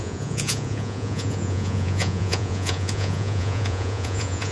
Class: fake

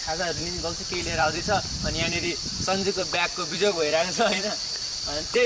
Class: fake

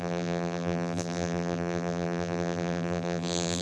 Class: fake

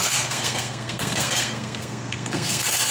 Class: fake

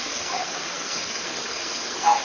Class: fake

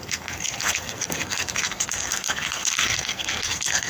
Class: fake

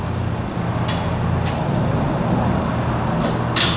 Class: real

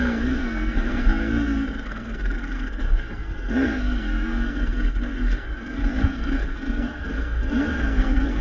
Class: fake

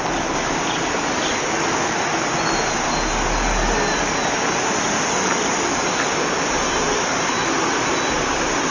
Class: real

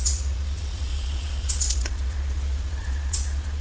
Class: fake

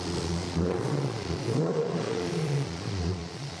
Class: fake